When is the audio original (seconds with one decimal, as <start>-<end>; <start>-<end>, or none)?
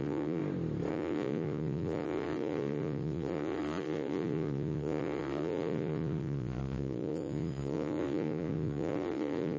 0.4-0.9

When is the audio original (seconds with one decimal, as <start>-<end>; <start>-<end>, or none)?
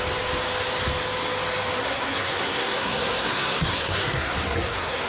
0.0-1.8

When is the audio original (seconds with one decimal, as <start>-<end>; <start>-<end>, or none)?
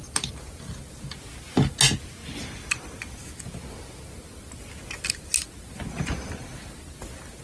0.0-7.4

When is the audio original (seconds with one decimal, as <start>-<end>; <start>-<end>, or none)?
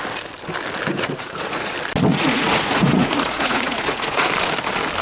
0.0-0.9; 1.7-2.1; 4.3-5.0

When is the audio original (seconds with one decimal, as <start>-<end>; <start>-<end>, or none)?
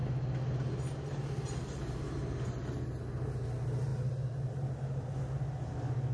0.0-6.1